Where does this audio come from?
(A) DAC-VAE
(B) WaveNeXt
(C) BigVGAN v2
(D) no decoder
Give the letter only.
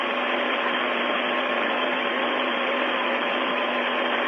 C